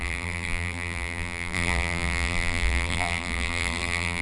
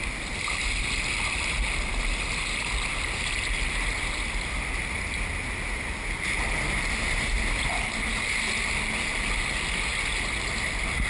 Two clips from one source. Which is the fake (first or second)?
first